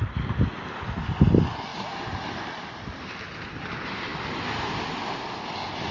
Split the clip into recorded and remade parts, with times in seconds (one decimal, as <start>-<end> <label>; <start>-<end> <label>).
0.0-5.9 recorded